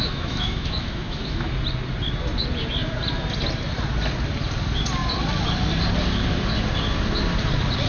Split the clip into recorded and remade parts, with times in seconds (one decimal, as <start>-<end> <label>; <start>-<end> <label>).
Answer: 0.0-1.5 remade; 1.5-7.9 recorded